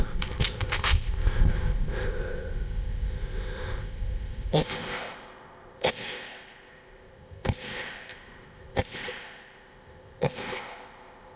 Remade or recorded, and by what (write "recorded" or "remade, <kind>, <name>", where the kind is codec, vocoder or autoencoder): remade, codec, ZipCodec